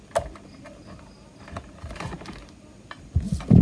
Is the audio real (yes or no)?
yes